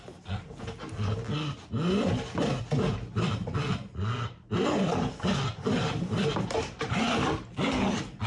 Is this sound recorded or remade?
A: recorded